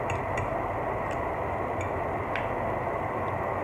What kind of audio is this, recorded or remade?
recorded